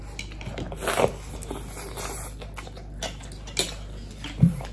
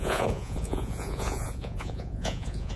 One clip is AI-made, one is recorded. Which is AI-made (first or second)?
second